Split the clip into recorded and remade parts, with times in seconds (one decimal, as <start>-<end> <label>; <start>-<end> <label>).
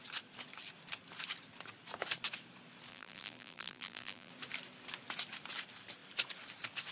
0.0-2.9 recorded; 2.9-4.3 remade; 4.3-6.9 recorded